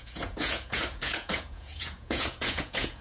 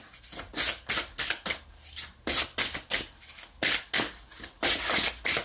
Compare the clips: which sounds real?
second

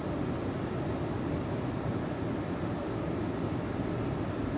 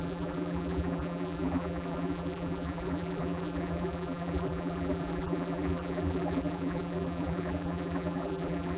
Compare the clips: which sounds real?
first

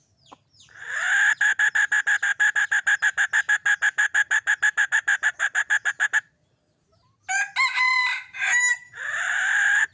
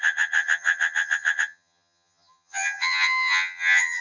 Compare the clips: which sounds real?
first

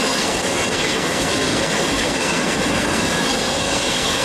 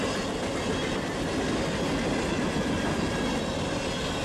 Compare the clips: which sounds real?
second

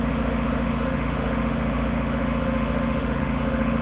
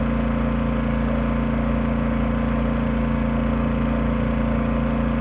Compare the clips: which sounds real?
second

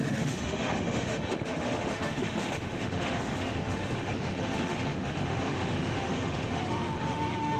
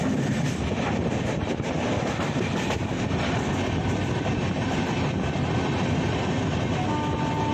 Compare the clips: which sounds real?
second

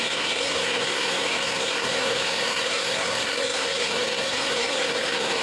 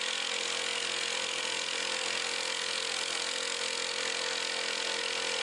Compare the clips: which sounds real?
second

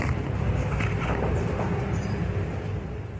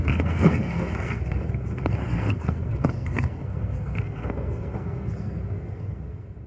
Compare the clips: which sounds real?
first